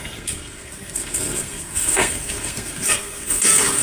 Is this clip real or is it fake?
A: fake